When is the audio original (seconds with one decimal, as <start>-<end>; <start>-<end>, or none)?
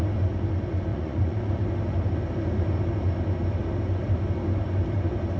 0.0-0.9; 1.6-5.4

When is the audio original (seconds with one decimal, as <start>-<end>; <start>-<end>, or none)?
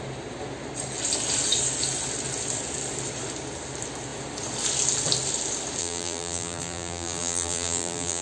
0.0-5.8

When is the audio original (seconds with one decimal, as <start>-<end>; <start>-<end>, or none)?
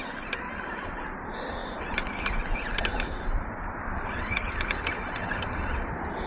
1.0-6.3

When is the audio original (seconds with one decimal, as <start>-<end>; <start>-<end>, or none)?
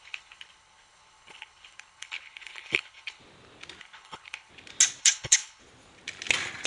3.2-3.8; 4.5-5.0; 5.6-6.7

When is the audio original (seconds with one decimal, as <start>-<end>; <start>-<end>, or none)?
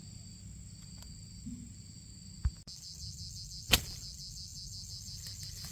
0.0-5.7